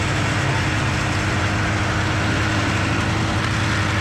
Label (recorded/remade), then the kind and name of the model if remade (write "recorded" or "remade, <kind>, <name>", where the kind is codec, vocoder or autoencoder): recorded